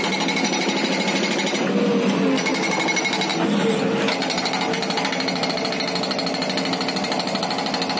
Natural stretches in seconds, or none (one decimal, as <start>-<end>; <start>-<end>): 0.0-8.0